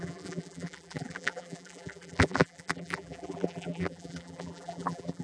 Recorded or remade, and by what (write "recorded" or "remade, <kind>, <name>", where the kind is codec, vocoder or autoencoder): remade, vocoder, BigVGAN v2